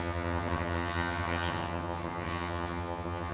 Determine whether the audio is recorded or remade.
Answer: remade